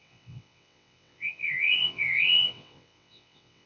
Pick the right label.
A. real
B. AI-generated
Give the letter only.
B